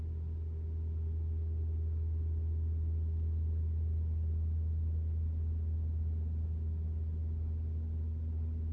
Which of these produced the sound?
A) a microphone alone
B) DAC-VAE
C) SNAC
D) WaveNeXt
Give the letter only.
A